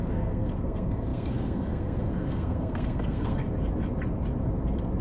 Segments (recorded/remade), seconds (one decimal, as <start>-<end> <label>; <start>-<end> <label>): 0.0-3.4 remade; 3.4-5.0 recorded